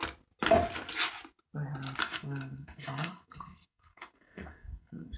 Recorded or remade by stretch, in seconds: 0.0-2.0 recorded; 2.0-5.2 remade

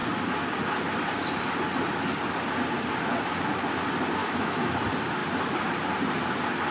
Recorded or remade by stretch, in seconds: 0.0-4.2 recorded; 4.2-4.7 remade; 4.7-6.7 recorded

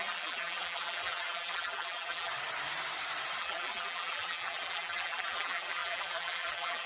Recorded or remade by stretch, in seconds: 0.0-2.3 remade; 2.3-3.4 recorded; 3.4-6.9 remade

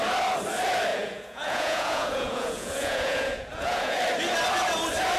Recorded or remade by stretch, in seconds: 0.0-0.9 recorded; 0.9-4.0 remade; 4.0-5.2 recorded

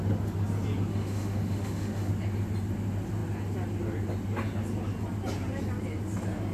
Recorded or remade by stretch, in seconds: 0.0-0.9 recorded; 0.9-2.1 remade; 2.1-6.5 recorded

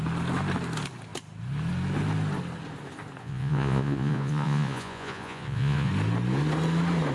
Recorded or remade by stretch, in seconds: 0.0-3.2 recorded; 3.2-5.9 remade; 5.9-7.1 recorded